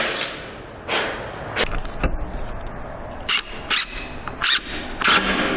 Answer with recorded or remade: recorded